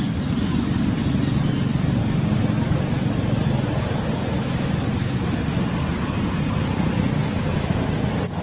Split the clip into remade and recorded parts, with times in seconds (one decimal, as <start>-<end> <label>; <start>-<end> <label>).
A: 0.0-8.4 recorded